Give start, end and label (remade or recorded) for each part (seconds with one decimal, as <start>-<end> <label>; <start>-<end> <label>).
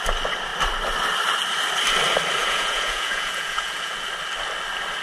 0.0-2.4 recorded; 2.4-4.0 remade; 4.0-5.0 recorded